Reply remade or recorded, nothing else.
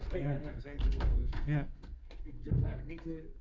remade